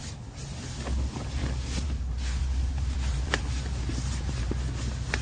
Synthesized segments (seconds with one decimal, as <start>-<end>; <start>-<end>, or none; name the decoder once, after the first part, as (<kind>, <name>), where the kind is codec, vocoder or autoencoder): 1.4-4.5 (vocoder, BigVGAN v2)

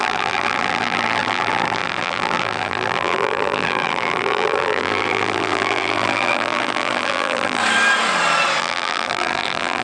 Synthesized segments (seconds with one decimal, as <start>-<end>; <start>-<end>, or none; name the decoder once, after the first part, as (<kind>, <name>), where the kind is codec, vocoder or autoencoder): 0.0-7.6 (vocoder, BigVGAN v2); 8.6-9.8

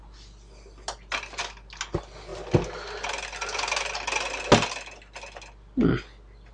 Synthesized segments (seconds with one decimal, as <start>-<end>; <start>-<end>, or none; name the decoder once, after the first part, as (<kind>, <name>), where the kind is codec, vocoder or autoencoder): none